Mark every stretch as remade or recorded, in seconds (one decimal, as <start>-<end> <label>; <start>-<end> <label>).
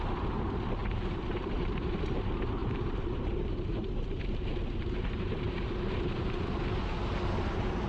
0.0-0.8 recorded; 0.8-1.9 remade; 1.9-2.6 recorded; 2.6-5.6 remade; 5.6-7.9 recorded